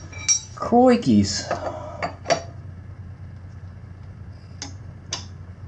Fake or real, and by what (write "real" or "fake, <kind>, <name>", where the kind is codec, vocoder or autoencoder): real